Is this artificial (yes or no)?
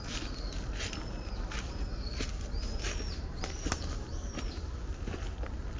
no